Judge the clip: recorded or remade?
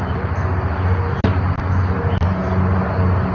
recorded